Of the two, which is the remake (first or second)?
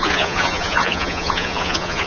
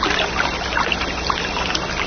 first